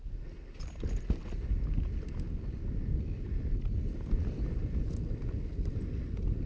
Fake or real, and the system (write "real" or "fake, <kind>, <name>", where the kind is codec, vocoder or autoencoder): real